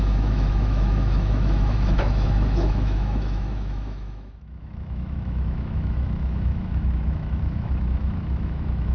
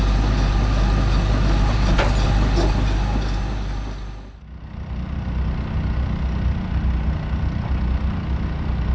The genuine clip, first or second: second